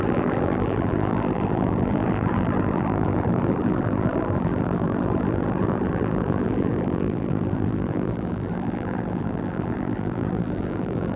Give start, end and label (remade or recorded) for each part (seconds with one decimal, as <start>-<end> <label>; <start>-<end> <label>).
0.0-11.2 remade